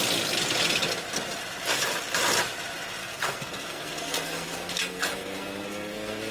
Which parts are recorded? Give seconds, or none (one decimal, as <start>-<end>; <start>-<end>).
0.0-3.0